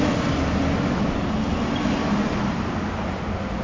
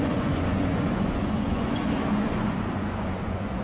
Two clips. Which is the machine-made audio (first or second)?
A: second